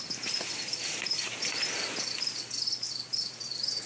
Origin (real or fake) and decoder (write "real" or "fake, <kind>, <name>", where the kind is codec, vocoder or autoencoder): real